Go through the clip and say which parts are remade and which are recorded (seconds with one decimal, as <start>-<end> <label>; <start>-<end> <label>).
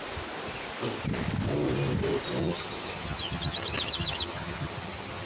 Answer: 0.0-2.4 recorded; 2.4-5.3 remade